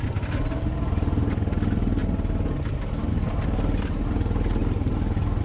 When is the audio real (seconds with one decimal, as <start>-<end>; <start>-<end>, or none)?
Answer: 0.0-5.4